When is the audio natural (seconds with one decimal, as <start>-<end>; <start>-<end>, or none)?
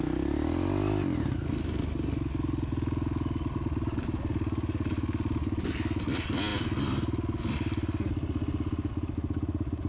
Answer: 0.0-9.9